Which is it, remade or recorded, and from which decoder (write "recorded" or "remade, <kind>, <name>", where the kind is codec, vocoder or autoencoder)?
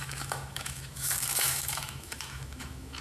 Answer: remade, autoencoder, DAC-VAE